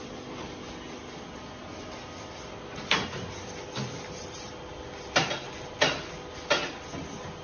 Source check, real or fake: real